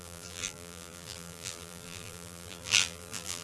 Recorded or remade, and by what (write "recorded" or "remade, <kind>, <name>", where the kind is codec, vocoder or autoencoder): remade, vocoder, BigVGAN v2